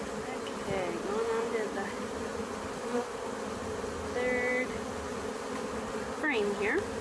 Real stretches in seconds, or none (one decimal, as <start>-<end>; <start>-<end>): 0.0-7.0